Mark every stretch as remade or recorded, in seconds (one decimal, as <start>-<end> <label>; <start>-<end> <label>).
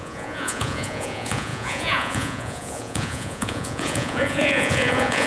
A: 0.0-5.3 remade